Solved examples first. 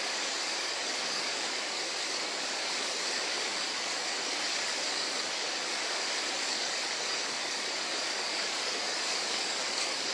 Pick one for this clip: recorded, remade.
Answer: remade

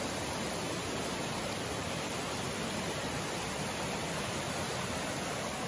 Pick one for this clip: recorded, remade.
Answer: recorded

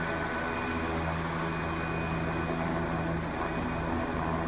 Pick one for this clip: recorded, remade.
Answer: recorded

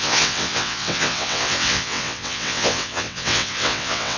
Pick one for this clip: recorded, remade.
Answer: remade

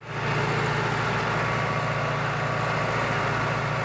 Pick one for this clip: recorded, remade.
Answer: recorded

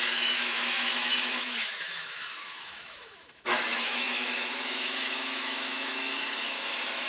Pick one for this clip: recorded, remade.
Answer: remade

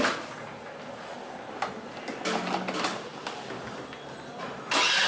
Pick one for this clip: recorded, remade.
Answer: recorded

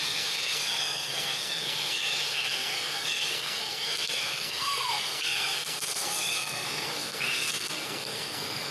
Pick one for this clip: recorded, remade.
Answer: remade